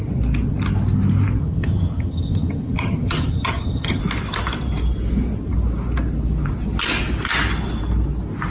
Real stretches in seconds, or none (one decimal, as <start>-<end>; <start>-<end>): 0.0-1.4; 4.0-8.5

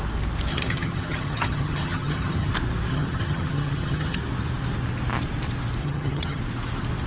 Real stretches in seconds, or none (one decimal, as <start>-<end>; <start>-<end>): 0.0-0.5; 2.5-2.9; 4.2-5.8; 6.4-7.1

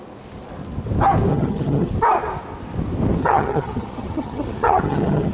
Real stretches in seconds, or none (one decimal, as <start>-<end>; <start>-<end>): 0.0-1.3; 1.9-3.2

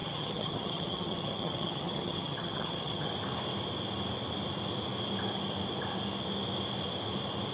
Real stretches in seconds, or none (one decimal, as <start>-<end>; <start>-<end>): 3.1-7.5